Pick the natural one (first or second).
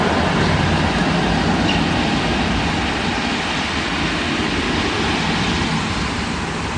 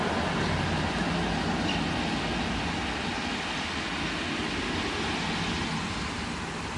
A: second